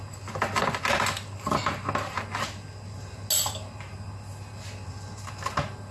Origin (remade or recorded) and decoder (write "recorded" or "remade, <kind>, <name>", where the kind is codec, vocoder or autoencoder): recorded